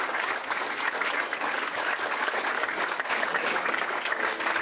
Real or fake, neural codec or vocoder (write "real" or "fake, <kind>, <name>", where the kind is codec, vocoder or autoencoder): fake, codec, DAC